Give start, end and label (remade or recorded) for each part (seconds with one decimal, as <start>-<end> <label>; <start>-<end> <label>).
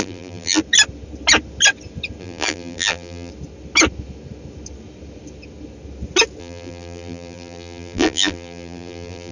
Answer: 0.0-0.6 remade; 0.6-2.2 recorded; 2.2-3.3 remade; 3.3-6.4 recorded; 6.4-9.3 remade